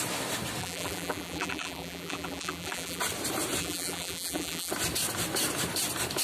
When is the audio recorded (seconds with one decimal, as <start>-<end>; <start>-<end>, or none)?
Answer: 0.0-0.6; 3.0-3.6; 4.7-6.2